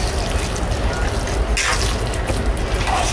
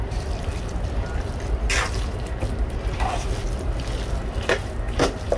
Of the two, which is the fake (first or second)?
second